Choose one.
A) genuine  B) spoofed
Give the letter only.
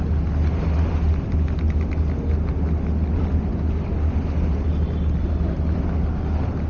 A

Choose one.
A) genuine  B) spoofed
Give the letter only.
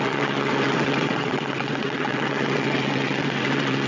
B